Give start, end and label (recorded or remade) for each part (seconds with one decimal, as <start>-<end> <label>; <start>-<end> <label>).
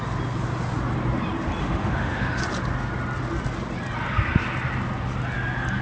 0.0-1.6 recorded; 1.6-2.4 remade; 2.4-5.8 recorded